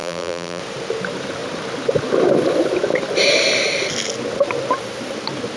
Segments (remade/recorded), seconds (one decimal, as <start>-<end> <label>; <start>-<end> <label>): 0.0-0.6 remade; 0.6-5.6 recorded